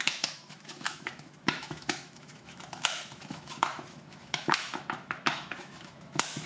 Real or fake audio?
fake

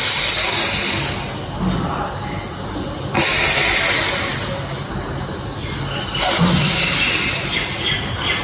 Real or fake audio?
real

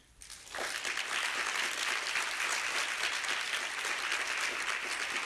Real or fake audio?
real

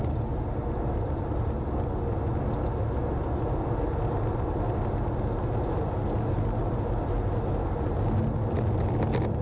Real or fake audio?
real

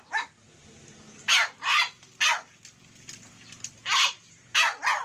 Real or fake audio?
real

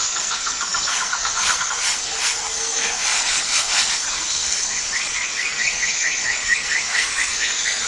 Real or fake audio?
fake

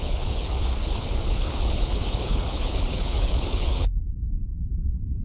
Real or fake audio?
fake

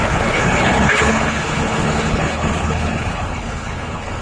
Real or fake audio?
fake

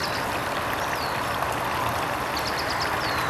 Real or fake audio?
real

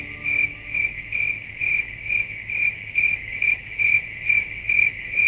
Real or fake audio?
fake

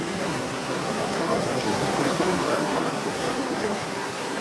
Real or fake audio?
fake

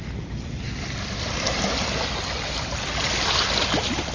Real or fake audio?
real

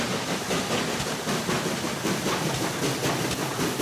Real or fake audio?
real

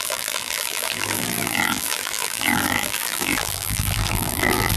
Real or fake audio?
fake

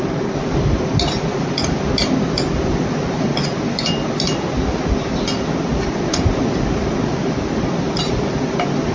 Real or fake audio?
real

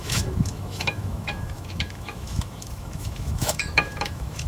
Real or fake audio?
fake